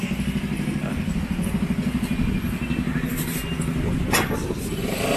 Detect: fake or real real